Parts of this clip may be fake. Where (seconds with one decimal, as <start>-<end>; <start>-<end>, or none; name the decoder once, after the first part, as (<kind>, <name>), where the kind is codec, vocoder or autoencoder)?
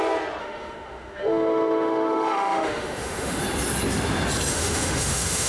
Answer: 0.4-3.4 (autoencoder, DAC-VAE); 4.5-5.5